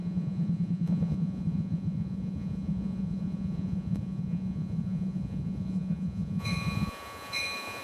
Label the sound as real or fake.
fake